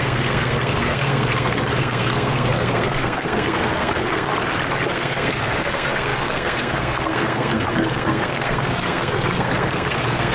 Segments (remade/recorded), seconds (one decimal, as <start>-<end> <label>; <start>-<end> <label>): 0.0-4.3 remade; 4.3-4.9 recorded; 4.9-10.3 remade